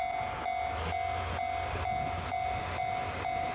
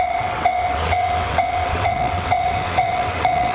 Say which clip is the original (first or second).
first